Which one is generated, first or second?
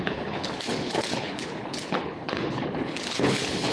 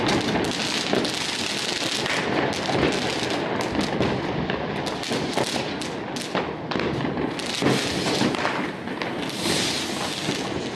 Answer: first